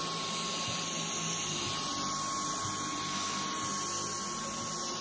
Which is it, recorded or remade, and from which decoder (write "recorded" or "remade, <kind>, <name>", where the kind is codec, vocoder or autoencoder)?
recorded